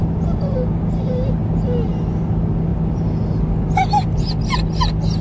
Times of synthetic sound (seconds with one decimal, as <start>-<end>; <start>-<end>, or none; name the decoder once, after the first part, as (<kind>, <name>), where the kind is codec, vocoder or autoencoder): none